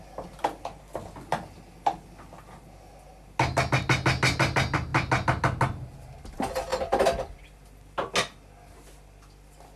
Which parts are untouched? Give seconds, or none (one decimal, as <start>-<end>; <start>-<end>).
0.0-9.8